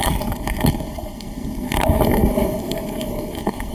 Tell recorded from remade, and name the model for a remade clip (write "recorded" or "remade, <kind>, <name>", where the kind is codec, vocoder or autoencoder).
remade, codec, SNAC